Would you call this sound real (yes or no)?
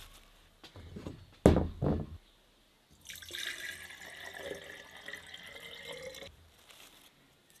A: yes